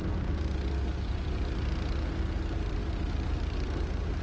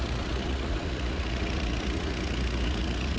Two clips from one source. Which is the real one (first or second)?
first